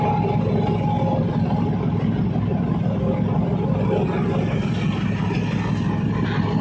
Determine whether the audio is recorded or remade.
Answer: recorded